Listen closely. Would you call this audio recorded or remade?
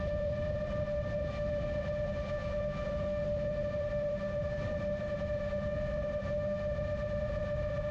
recorded